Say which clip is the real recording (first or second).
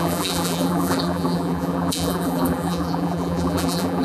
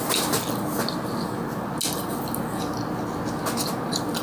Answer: second